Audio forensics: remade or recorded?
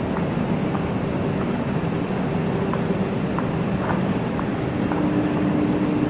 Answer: recorded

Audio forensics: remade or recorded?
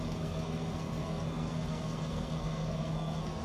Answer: remade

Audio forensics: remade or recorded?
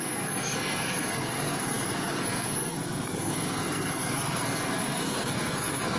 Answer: remade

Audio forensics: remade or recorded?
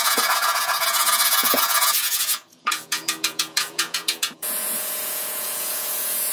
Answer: remade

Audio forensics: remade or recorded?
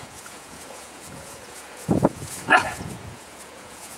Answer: remade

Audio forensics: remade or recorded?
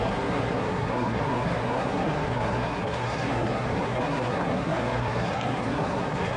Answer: remade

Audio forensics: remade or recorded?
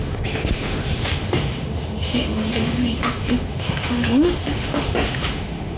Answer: remade